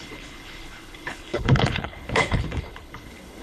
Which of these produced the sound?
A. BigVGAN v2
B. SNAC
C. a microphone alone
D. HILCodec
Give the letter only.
D